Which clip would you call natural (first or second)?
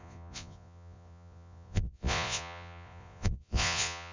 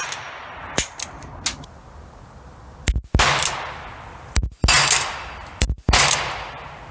second